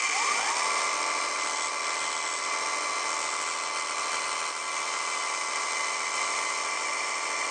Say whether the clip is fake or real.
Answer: fake